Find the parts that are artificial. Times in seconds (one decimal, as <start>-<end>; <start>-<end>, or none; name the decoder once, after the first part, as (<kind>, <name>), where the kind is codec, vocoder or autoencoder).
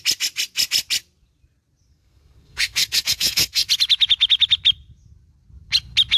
1.9-3.7 (codec, SNAC)